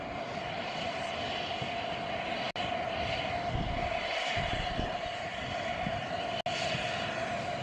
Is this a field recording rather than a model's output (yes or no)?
yes